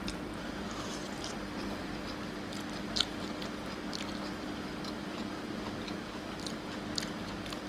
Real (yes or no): yes